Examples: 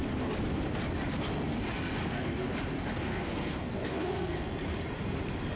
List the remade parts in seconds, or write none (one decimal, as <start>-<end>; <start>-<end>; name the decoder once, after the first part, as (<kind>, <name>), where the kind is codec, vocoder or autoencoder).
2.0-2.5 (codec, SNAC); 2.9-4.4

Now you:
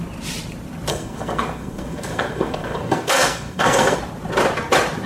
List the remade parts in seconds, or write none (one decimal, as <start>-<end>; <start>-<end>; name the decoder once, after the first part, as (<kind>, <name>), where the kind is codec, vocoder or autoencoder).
0.9-4.0 (codec, SNAC)

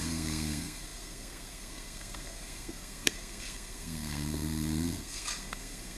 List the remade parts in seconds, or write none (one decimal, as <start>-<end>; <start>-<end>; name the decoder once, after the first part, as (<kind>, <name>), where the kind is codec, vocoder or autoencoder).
0.0-6.0 (codec, SNAC)

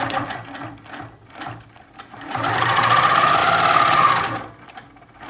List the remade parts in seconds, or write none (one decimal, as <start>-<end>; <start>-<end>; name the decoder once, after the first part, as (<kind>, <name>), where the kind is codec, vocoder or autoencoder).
none

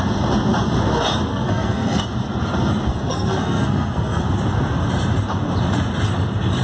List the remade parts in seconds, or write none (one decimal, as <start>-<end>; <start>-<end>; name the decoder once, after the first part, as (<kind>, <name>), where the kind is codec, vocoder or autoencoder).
1.3-2.0 (codec, SNAC); 2.9-4.2

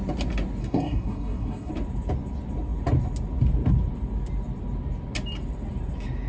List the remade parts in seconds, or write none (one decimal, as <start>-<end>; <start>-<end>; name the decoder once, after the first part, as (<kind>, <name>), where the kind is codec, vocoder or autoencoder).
0.6-1.7 (codec, SNAC)